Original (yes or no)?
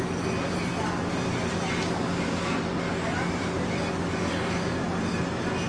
yes